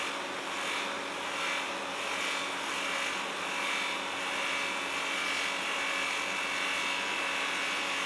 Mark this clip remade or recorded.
recorded